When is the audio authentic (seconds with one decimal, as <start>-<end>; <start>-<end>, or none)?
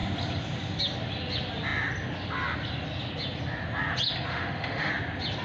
0.0-4.3; 4.9-5.4